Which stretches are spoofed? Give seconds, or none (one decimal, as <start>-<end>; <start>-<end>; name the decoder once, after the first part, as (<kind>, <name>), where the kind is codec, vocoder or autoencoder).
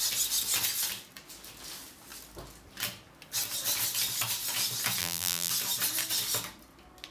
5.0-5.5 (vocoder, BigVGAN v2)